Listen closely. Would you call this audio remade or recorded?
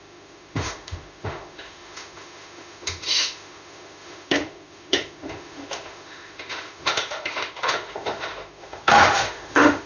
remade